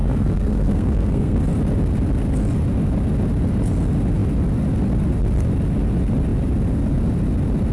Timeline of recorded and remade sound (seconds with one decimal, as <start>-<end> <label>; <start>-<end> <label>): 0.0-1.4 remade; 1.4-7.7 recorded